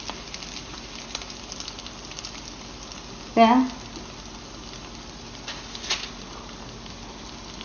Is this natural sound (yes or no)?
yes